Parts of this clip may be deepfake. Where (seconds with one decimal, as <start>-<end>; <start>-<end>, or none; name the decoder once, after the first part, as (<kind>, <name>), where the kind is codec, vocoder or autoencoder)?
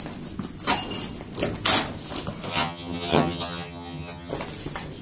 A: 2.5-4.3 (vocoder, HiFi-GAN)